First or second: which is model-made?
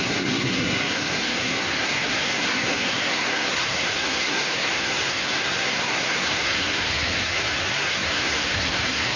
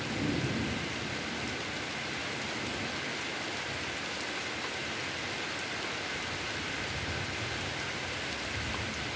first